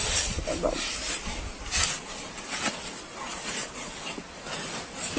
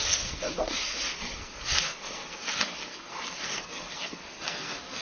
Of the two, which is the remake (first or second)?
second